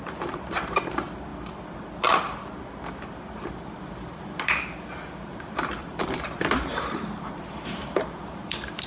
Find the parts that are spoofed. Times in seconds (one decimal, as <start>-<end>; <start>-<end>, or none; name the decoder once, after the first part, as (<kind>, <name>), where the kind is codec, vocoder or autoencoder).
1.3-1.8 (vocoder, BigVGAN v2); 5.8-8.9